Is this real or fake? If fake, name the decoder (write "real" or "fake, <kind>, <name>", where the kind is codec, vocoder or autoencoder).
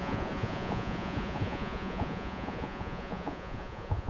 fake, vocoder, Vocos